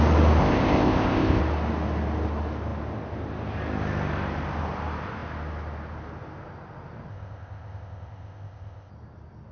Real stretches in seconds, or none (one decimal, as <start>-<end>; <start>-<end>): 0.0-0.4; 1.4-7.1; 8.9-9.5